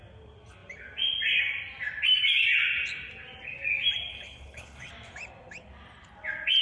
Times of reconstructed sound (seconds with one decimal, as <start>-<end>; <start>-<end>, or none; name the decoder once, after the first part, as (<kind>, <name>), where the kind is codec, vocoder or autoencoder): 4.1-4.9 (codec, HILCodec)